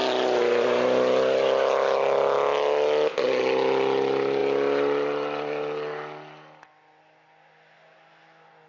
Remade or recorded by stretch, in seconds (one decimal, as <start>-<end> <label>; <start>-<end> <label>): 0.0-8.7 recorded